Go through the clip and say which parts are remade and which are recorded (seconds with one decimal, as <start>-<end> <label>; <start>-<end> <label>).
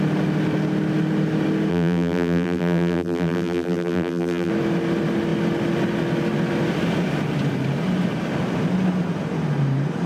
0.0-1.7 recorded; 1.7-4.5 remade; 4.5-10.1 recorded